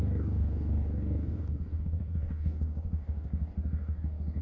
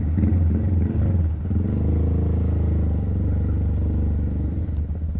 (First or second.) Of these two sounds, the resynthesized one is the first